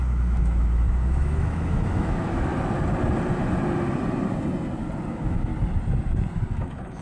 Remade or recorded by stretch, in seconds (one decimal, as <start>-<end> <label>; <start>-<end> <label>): 0.0-2.5 remade; 2.5-5.1 recorded; 5.1-5.5 remade; 5.5-6.5 recorded; 6.5-7.0 remade